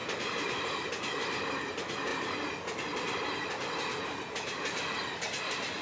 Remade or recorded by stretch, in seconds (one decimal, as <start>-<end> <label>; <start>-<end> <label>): 0.0-0.9 remade; 0.9-5.8 recorded